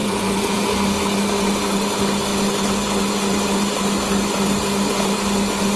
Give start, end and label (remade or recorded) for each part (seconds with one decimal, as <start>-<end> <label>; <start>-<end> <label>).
0.0-0.6 remade; 0.6-5.8 recorded